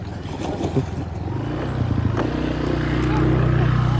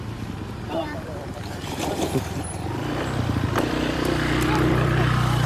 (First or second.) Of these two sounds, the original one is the first